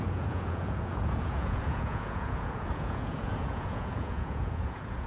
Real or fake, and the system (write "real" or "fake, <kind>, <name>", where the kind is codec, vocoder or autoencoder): fake, vocoder, Vocos